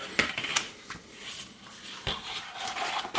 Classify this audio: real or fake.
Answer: real